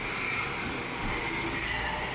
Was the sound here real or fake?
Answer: real